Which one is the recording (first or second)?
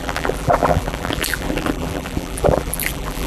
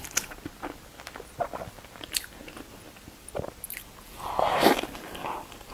second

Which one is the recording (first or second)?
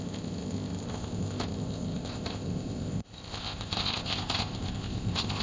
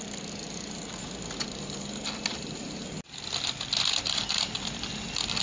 second